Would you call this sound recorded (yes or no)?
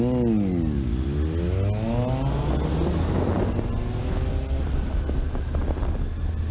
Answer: yes